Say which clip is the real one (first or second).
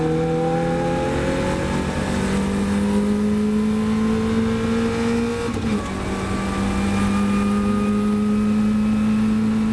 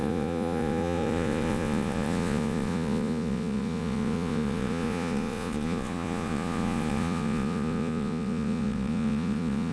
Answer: first